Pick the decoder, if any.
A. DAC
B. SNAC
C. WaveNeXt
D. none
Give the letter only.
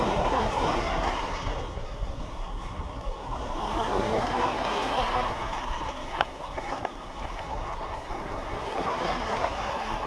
B